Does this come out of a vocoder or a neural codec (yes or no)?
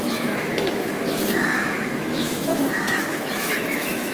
yes